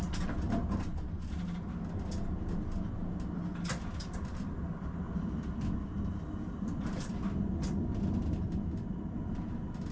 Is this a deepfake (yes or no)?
no